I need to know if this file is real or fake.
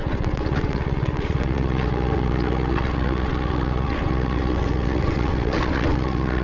fake